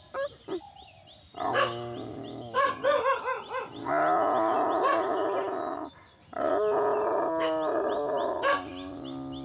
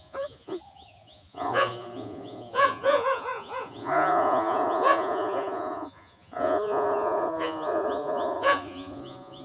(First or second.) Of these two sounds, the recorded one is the first